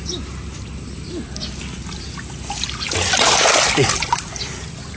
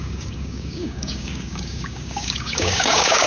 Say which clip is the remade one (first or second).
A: second